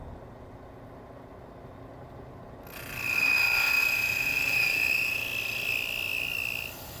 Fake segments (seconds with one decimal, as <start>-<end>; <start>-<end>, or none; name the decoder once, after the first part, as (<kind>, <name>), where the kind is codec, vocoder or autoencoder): 3.8-4.9 (vocoder, BigVGAN v2)